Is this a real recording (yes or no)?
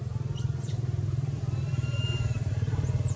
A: no